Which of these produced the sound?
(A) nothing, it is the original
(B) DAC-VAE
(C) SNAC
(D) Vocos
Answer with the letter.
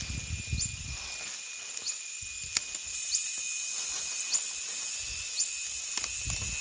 A